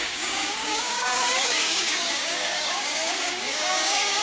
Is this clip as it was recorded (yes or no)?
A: no